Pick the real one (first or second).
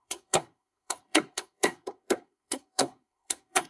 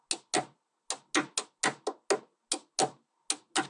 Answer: second